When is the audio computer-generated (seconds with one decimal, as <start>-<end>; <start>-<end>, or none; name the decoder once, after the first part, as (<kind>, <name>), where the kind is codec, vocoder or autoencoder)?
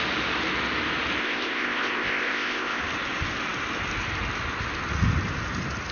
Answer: 1.2-2.8 (codec, ZipCodec)